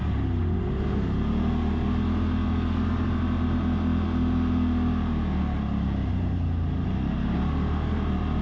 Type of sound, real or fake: real